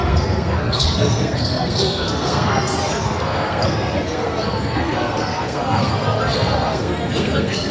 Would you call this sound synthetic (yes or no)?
yes